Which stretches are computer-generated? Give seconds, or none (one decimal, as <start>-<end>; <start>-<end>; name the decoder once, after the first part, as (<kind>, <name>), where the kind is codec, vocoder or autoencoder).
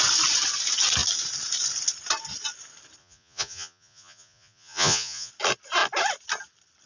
3.0-5.3 (vocoder, Vocos)